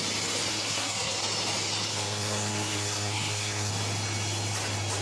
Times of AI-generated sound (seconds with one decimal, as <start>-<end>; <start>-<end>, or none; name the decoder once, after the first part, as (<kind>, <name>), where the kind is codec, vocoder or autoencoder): 0.5-1.2 (codec, SNAC); 1.9-3.7